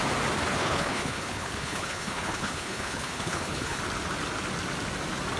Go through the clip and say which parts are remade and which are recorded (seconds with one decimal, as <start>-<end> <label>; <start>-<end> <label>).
0.0-0.6 recorded; 0.6-3.8 remade; 3.8-5.4 recorded